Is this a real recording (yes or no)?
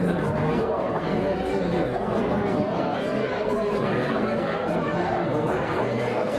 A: no